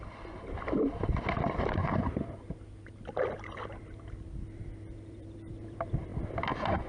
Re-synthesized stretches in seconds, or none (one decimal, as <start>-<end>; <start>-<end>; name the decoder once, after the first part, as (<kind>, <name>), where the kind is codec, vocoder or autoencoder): 0.0-1.8 (vocoder, BigVGAN v2); 3.3-6.1